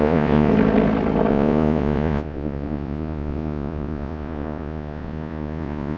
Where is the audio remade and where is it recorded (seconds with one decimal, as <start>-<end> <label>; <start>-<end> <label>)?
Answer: 0.0-0.5 remade; 0.5-1.3 recorded; 1.3-6.0 remade